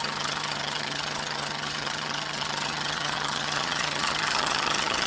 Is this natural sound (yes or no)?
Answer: no